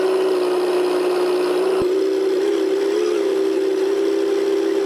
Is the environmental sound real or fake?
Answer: real